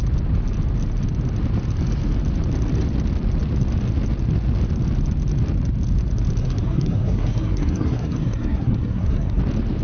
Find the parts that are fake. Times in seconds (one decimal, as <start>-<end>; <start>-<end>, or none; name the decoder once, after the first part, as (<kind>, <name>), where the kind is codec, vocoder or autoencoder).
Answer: 6.4-9.4 (codec, SNAC)